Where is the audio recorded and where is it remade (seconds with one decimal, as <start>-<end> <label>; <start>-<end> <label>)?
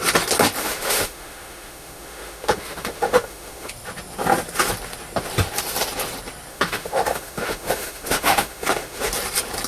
0.0-0.6 recorded; 0.6-3.7 remade; 3.7-6.5 recorded; 6.5-9.1 remade; 9.1-9.7 recorded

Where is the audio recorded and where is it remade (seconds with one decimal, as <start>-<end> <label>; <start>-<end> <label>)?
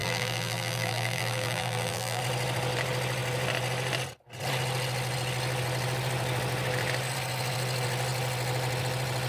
0.0-2.2 remade; 2.2-9.3 recorded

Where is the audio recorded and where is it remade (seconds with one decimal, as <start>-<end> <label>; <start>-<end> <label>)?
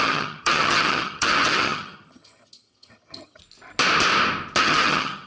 0.0-3.4 remade; 3.4-4.6 recorded; 4.6-5.3 remade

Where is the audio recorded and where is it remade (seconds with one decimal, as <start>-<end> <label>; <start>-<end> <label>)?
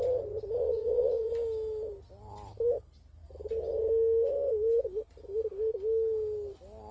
0.0-0.6 recorded; 0.6-1.3 remade; 1.3-6.9 recorded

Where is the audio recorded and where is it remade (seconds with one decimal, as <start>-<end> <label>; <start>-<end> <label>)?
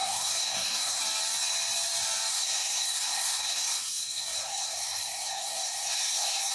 0.0-1.0 remade; 1.0-2.3 recorded; 2.3-6.5 remade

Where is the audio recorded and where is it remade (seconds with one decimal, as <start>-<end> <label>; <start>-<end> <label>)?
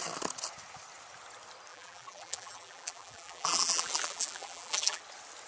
0.0-1.7 recorded; 1.7-5.0 remade; 5.0-5.5 recorded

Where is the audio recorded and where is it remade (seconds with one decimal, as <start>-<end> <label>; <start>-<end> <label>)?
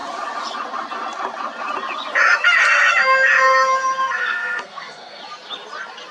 0.0-4.2 recorded; 4.2-5.2 remade; 5.2-6.1 recorded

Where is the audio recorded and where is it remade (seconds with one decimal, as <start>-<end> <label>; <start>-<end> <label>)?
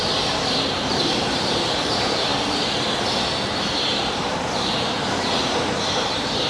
0.0-2.3 remade; 2.3-3.9 recorded; 3.9-6.5 remade